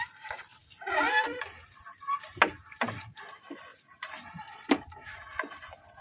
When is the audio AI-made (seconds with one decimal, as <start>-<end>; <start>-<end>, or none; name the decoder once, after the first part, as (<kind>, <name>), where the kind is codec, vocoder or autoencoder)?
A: none